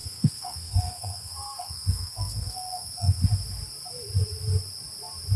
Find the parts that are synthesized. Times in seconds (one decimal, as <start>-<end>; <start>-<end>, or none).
0.0-3.2